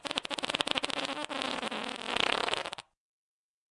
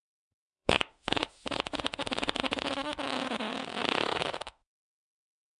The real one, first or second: first